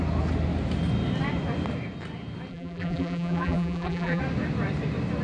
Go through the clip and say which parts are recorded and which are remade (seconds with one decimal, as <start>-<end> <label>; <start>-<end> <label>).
0.0-2.5 recorded; 2.5-4.2 remade; 4.2-5.2 recorded